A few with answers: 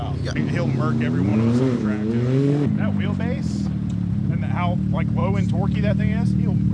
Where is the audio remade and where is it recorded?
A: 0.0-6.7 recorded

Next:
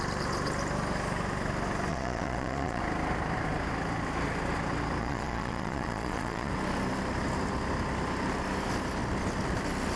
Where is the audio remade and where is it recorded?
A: 0.0-1.9 recorded; 1.9-2.8 remade; 2.8-5.0 recorded; 5.0-6.5 remade; 6.5-10.0 recorded

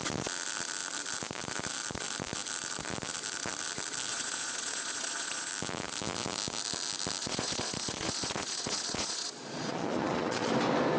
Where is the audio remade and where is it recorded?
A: 0.0-4.1 recorded; 4.1-5.5 remade; 5.5-7.2 recorded; 7.2-10.5 remade; 10.5-11.0 recorded

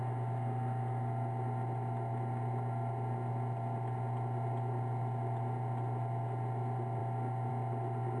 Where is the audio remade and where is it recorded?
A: 0.0-8.2 recorded

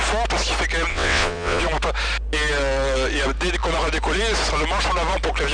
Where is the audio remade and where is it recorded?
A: 0.0-0.9 recorded; 0.9-1.6 remade; 1.6-5.5 recorded

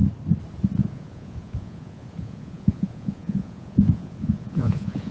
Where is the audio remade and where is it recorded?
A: 0.0-0.8 recorded; 0.8-5.1 remade

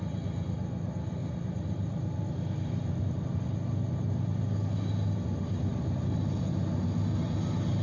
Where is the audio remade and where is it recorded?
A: 0.0-1.2 recorded; 1.2-3.0 remade; 3.0-5.7 recorded; 5.7-6.4 remade; 6.4-7.8 recorded